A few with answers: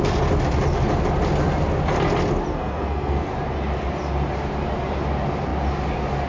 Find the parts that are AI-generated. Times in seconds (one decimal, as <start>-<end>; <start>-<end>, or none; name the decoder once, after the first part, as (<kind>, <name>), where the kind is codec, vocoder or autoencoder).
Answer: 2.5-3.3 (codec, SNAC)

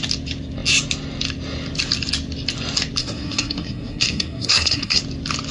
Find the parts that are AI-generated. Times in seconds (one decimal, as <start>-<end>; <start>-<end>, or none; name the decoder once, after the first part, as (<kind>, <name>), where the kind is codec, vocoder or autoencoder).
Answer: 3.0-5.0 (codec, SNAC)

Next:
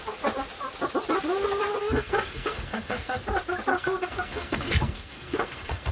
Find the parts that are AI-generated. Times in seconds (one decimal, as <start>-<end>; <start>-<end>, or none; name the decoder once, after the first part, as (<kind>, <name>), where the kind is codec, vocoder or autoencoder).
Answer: 1.8-3.2 (codec, SNAC); 3.7-5.9

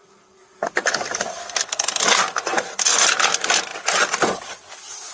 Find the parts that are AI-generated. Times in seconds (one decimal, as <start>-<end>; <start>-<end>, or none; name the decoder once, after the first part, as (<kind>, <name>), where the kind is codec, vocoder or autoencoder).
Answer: 1.4-2.0 (codec, SNAC)

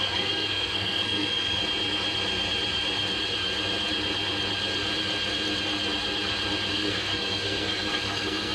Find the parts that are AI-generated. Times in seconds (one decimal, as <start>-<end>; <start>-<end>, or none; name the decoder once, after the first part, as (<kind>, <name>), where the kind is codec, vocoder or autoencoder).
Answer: 0.0-1.6 (codec, SNAC); 6.7-8.5

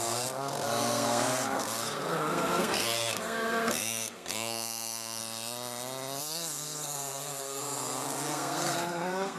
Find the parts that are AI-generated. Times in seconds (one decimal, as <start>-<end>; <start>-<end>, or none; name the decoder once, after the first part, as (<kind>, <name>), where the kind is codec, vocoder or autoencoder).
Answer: 0.0-5.2 (codec, SNAC); 6.2-9.4

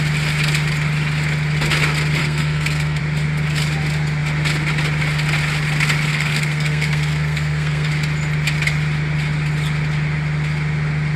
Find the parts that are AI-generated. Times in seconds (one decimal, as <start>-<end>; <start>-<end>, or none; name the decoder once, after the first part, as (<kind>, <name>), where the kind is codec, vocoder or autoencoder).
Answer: 2.2-3.0 (codec, SNAC); 6.1-7.9

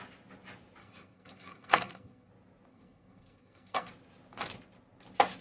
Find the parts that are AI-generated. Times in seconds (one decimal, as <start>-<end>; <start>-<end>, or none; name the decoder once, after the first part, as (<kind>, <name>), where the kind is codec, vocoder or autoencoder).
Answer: 0.8-2.3 (codec, SNAC); 2.7-3.9